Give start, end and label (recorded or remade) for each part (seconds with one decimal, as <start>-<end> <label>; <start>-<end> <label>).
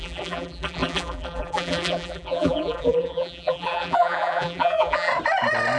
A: 0.0-5.1 remade; 5.1-5.8 recorded